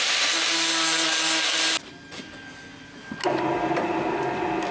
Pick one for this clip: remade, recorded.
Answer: recorded